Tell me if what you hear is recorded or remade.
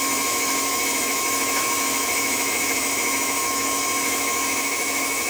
remade